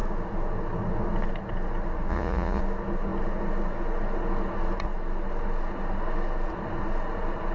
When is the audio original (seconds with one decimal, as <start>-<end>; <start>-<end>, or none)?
0.0-2.1; 2.6-7.5